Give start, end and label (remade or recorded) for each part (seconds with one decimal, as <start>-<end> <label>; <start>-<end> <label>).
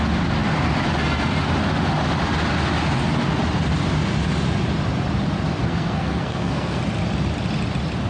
0.0-5.6 recorded; 5.6-6.8 remade; 6.8-8.1 recorded